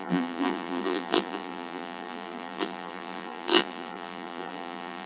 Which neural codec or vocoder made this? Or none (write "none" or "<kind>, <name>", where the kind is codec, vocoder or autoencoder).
vocoder, BigVGAN v2